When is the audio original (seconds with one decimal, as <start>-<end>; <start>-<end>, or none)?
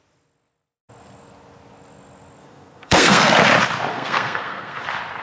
0.0-2.4; 3.3-3.9; 4.8-5.2